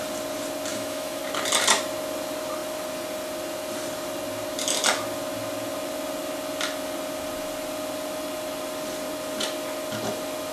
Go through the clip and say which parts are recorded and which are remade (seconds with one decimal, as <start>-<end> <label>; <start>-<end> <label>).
0.0-0.7 recorded; 0.7-1.2 remade; 1.2-10.5 recorded